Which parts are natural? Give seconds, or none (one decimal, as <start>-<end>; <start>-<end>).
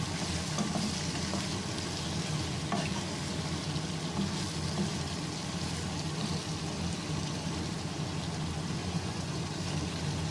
0.0-8.8; 9.4-10.3